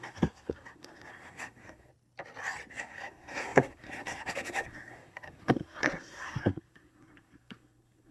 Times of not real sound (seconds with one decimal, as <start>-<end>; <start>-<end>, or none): 0.0-1.9; 2.7-8.1